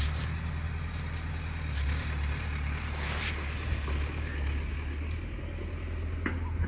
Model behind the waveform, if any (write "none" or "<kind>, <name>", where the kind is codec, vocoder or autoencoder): none